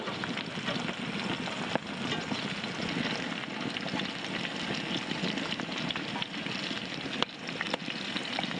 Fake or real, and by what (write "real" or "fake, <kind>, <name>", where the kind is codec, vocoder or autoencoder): real